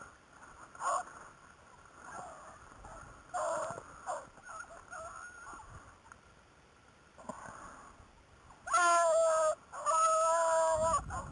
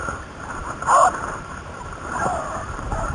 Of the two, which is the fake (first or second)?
second